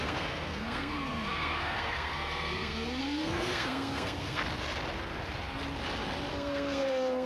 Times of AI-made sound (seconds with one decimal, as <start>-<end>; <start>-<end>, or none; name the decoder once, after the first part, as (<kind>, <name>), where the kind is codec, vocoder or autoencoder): 0.0-4.4 (codec, SNAC); 6.3-7.3